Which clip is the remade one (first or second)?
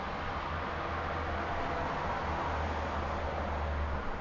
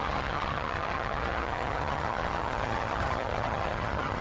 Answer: second